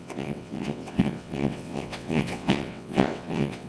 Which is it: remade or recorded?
remade